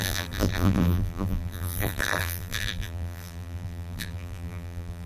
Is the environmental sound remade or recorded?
remade